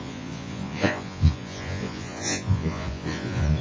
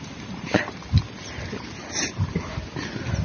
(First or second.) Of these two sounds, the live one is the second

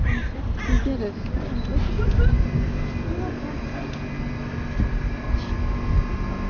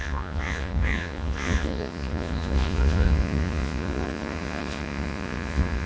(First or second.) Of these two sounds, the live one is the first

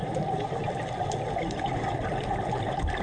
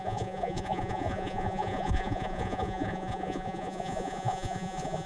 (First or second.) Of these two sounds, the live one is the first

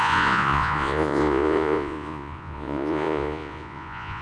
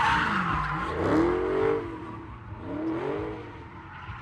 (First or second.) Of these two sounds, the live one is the second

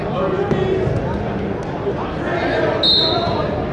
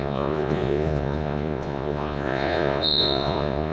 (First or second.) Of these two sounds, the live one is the first